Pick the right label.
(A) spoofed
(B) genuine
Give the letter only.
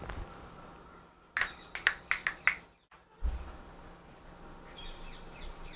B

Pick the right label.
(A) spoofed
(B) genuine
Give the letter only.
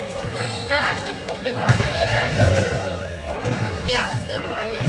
A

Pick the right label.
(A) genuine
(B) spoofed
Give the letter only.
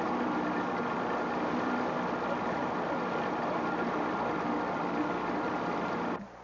A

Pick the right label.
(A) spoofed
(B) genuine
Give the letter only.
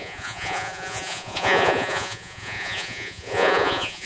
A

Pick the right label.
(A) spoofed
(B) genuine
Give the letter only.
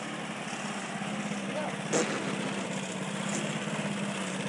B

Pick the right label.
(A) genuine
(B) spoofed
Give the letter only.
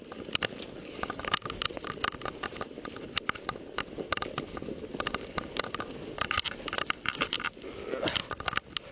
A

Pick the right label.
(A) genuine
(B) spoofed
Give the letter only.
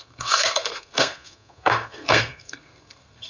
B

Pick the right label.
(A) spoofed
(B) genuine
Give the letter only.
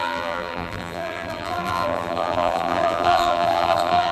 A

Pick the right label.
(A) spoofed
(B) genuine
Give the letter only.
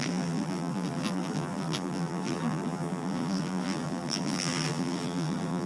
A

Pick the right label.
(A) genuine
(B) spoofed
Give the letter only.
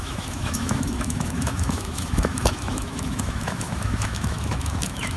B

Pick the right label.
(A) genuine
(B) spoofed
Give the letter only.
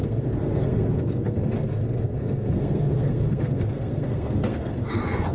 B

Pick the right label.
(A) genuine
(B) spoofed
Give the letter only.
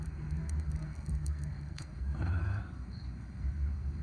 B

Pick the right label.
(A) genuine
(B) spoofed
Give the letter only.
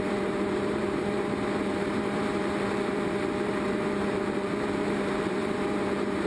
B